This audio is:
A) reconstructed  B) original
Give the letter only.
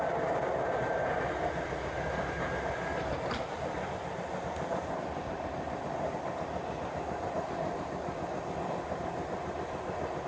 B